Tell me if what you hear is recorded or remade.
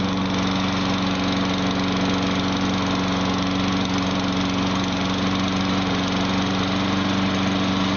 recorded